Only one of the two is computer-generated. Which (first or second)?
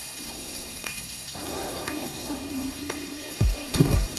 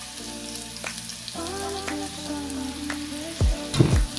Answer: first